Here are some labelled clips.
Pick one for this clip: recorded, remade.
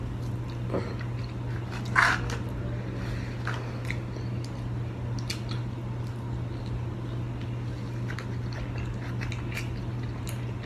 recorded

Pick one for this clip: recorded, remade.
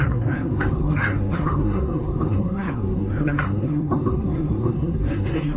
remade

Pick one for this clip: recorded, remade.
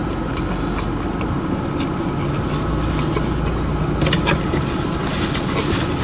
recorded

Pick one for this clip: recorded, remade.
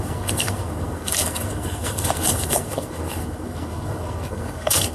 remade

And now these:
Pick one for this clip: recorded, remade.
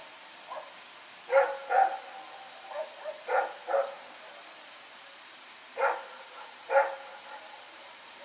recorded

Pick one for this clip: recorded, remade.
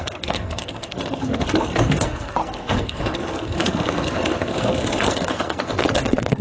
remade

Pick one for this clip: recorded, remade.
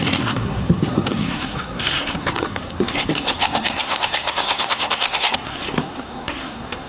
remade